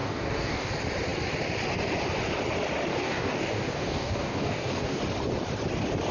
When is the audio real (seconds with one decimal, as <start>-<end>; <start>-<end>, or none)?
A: 0.7-2.9; 5.0-6.1